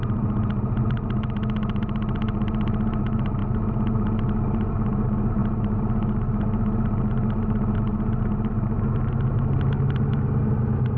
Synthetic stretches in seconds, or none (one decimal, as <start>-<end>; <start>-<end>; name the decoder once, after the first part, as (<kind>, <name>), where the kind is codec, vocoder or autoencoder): none